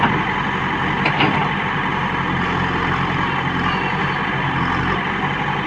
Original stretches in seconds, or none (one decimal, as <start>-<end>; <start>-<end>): 0.0-5.7